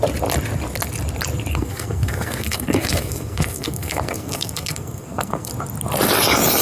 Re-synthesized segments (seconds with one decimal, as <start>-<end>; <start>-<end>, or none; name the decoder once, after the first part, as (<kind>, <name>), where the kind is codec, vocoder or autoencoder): 1.5-5.5 (codec, SNAC)